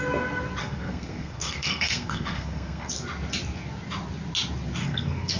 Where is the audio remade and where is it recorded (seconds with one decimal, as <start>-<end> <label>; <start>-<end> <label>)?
0.0-0.6 recorded; 0.6-2.9 remade; 2.9-4.8 recorded; 4.8-5.4 remade